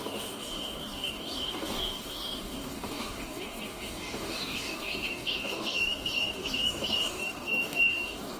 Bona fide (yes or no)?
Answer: no